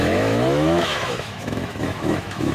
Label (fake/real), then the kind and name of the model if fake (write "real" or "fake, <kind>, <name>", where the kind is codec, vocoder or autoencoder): fake, autoencoder, DAC-VAE